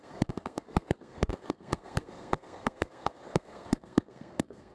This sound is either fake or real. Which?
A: fake